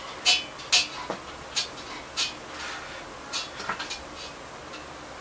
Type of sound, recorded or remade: recorded